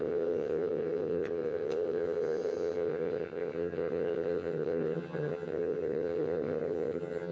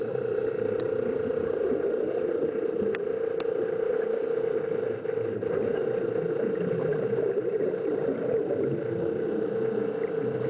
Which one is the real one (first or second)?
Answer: second